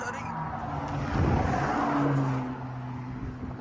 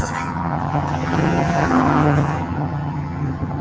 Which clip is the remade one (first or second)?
second